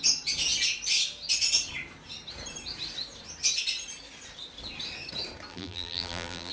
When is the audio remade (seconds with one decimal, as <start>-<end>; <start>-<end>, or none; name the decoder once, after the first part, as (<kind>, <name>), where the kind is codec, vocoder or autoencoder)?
5.5-6.5 (vocoder, BigVGAN v2)